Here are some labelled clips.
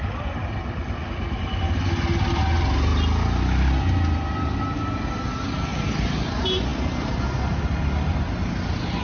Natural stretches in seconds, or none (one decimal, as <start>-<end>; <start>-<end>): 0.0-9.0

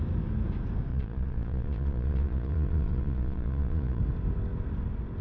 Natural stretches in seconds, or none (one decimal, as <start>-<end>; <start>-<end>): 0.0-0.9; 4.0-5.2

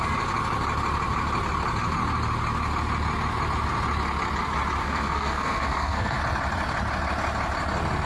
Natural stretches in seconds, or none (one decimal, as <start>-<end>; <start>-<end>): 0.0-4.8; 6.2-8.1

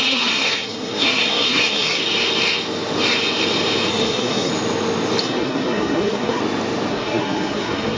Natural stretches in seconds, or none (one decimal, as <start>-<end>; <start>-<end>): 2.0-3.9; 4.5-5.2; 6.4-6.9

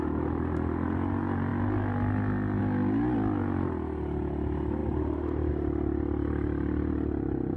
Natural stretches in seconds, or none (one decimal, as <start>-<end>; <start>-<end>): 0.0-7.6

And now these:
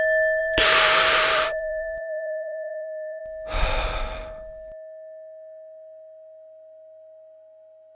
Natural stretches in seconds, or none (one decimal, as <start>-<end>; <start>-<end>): 0.0-0.4; 3.2-7.9